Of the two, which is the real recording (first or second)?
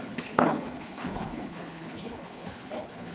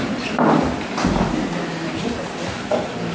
second